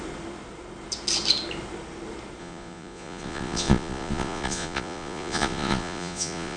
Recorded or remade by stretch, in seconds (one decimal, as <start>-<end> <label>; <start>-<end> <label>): 0.0-2.4 recorded; 2.4-6.6 remade